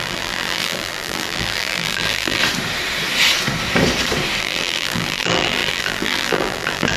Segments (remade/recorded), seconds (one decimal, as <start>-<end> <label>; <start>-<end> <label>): 0.0-2.4 remade; 2.4-4.4 recorded; 4.4-7.0 remade